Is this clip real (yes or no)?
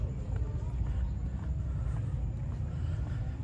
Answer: yes